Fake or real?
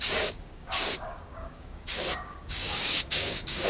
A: fake